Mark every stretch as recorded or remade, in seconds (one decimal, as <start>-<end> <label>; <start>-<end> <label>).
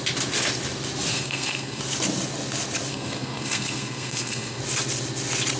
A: 0.0-1.1 recorded; 1.1-1.8 remade; 1.8-2.9 recorded; 2.9-4.6 remade; 4.6-5.6 recorded